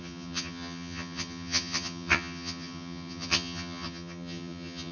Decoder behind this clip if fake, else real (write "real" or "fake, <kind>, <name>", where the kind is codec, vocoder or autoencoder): fake, vocoder, HiFi-GAN